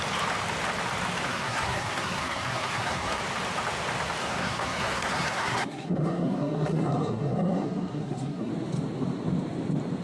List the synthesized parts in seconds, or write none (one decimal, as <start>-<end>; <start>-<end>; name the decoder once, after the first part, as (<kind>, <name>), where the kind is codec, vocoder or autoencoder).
1.3-3.2 (codec, SNAC); 4.2-8.5